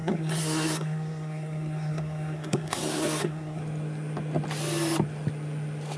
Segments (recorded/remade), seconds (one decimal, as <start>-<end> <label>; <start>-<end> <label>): 0.0-3.6 remade; 3.6-6.0 recorded